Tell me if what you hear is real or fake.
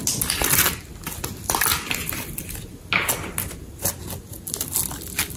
real